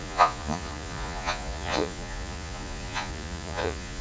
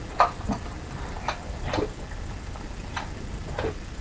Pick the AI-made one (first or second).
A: first